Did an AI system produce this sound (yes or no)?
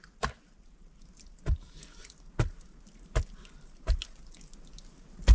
no